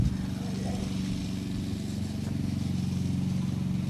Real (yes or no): yes